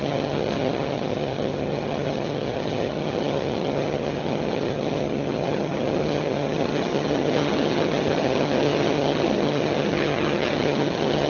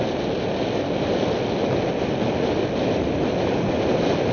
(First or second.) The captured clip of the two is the second